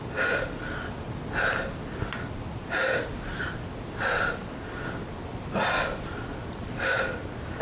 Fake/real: real